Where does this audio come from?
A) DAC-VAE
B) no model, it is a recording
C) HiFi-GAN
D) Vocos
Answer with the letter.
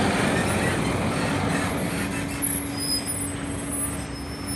B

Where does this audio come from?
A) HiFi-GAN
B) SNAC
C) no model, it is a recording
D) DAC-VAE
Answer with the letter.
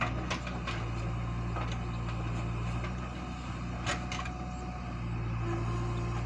C